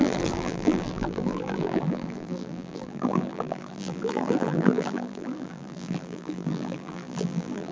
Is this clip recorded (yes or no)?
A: no